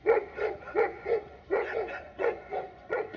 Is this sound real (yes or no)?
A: no